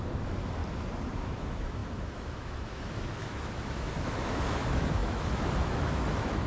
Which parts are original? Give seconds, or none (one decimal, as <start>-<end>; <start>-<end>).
0.6-1.2